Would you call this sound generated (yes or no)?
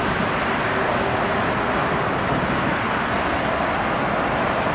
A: no